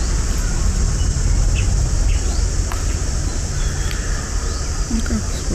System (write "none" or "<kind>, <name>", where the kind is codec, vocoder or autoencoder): none